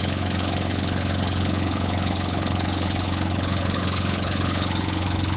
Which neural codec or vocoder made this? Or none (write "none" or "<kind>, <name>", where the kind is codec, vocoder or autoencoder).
codec, HILCodec